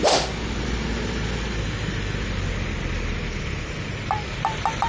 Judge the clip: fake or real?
real